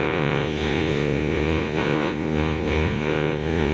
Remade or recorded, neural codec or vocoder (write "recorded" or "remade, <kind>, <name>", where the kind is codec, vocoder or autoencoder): remade, vocoder, Vocos